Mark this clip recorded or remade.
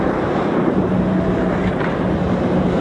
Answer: remade